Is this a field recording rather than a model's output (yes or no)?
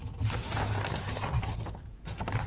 yes